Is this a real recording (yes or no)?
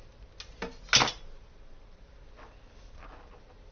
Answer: yes